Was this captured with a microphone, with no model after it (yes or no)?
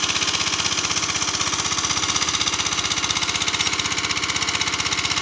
yes